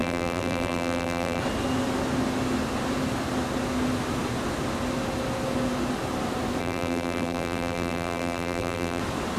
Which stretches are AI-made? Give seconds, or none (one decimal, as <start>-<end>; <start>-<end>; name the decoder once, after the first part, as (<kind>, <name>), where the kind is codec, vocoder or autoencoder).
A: 0.0-1.4 (vocoder, BigVGAN v2); 6.6-9.0